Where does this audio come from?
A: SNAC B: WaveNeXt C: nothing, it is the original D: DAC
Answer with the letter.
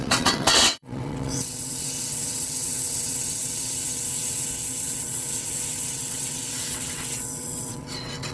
B